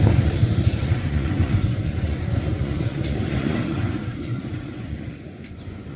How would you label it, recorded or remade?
remade